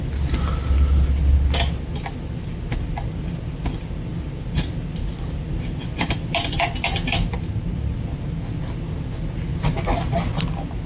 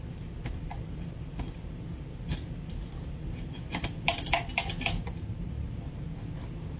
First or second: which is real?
first